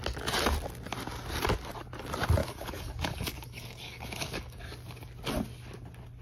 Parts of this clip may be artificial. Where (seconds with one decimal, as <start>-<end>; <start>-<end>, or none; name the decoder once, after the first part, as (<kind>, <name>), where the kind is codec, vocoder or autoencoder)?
2.4-4.6 (codec, DAC)